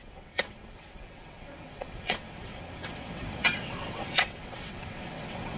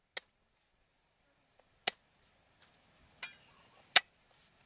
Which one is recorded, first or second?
second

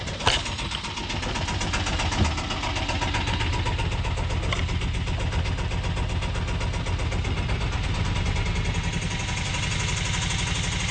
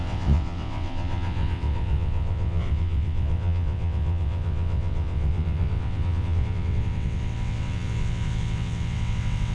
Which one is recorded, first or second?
first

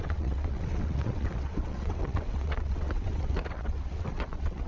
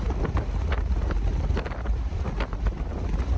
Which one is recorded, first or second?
second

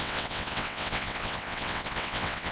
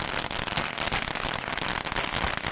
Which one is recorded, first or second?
second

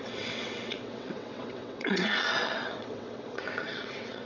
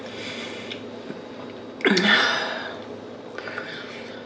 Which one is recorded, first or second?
second